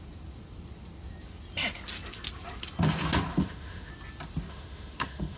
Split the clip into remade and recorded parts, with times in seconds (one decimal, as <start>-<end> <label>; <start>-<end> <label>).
0.0-3.3 recorded; 3.3-3.9 remade; 3.9-4.5 recorded; 4.5-5.4 remade